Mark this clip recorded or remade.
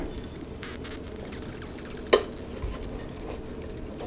recorded